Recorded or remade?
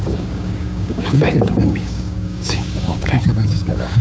remade